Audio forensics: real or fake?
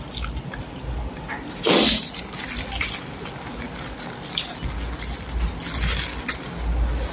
real